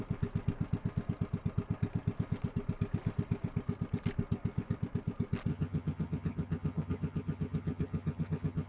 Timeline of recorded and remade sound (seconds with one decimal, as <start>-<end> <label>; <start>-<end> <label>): 0.0-5.5 recorded; 5.5-8.7 remade

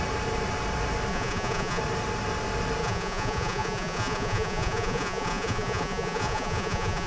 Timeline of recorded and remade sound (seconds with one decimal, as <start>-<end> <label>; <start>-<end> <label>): 0.0-1.1 recorded; 1.1-1.8 remade; 1.8-2.8 recorded; 2.8-7.1 remade